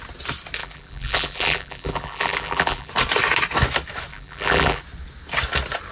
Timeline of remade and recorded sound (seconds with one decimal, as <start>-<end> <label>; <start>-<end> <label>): 0.0-0.6 recorded; 0.6-2.9 remade; 2.9-4.1 recorded; 4.1-4.8 remade; 4.8-5.9 recorded